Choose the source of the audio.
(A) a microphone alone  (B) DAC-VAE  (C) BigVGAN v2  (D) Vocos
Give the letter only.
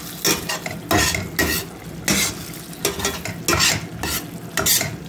A